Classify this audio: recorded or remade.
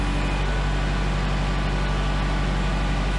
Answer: recorded